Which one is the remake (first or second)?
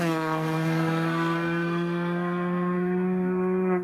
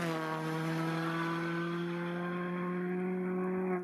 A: first